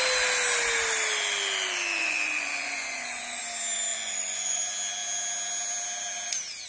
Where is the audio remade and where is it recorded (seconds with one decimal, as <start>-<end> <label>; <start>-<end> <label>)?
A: 0.0-2.0 recorded; 2.0-3.4 remade; 3.4-3.9 recorded; 3.9-4.6 remade; 4.6-6.7 recorded